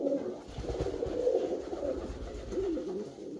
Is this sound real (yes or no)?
yes